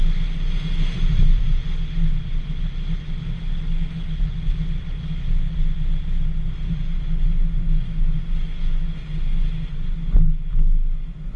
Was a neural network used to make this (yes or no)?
no